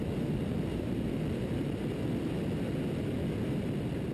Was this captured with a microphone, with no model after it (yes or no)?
yes